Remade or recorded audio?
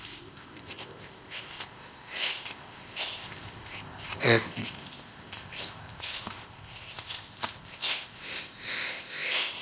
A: remade